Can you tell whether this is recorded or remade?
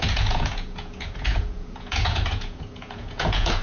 remade